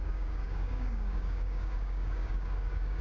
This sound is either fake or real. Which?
fake